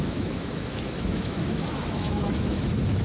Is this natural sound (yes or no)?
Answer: no